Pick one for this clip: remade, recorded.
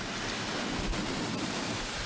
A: recorded